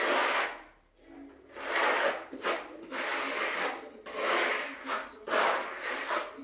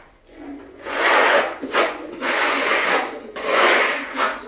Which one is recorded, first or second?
first